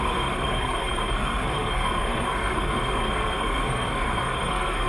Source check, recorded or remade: remade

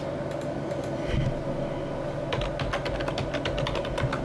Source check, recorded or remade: recorded